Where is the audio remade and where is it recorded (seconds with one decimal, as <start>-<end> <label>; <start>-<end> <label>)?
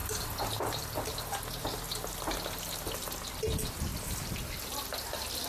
0.0-5.5 recorded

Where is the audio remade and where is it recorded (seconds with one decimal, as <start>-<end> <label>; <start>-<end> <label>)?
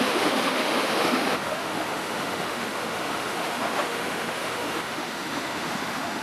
0.0-6.2 remade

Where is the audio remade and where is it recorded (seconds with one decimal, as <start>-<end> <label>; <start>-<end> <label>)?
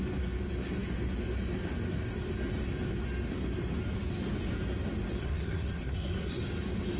0.0-5.2 recorded; 5.2-6.4 remade; 6.4-7.0 recorded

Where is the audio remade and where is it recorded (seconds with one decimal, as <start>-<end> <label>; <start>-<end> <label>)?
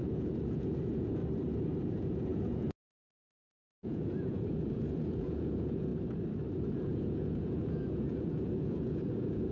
0.0-1.2 remade; 1.2-1.8 recorded; 1.8-5.9 remade; 5.9-6.7 recorded; 6.7-9.5 remade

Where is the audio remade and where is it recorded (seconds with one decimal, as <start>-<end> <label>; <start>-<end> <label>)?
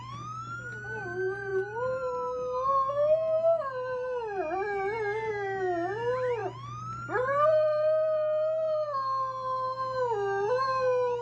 0.0-11.2 recorded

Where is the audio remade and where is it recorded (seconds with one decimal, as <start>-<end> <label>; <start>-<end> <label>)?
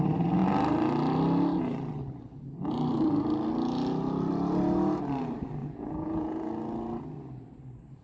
0.0-5.6 recorded; 5.6-6.5 remade; 6.5-8.0 recorded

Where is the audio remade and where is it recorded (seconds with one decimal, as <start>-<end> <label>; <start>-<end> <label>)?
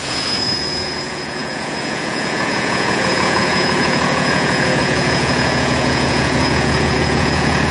0.0-7.7 remade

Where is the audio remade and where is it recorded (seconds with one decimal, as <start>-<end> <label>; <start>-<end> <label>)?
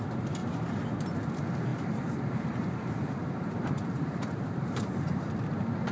0.0-0.4 recorded; 0.4-0.9 remade; 0.9-1.7 recorded; 1.7-5.2 remade; 5.2-5.9 recorded